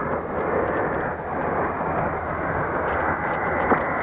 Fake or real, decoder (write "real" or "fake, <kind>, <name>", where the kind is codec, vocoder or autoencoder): real